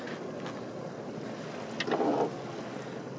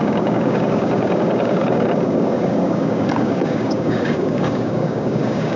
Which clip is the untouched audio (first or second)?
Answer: first